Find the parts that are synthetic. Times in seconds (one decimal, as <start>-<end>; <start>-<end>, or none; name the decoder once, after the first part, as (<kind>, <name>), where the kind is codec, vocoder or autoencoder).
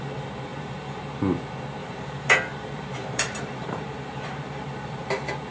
0.5-1.0 (vocoder, BigVGAN v2); 1.8-5.1